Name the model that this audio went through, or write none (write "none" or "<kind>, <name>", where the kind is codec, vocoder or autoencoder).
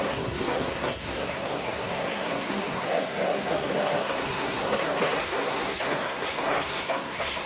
codec, SNAC